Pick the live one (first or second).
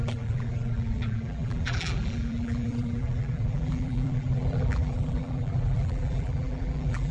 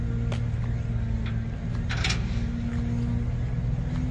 second